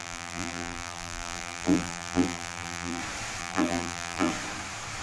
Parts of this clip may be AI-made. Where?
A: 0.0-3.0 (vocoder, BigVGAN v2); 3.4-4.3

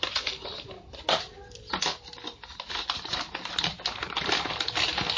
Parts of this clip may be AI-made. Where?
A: none

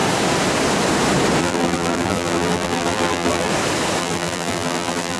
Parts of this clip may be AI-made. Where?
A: 1.4-3.5 (vocoder, BigVGAN v2); 4.0-5.2